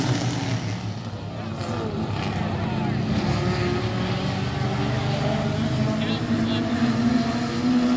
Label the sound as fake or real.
real